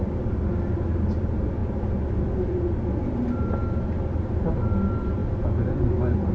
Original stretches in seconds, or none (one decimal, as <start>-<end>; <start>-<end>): 0.0-6.3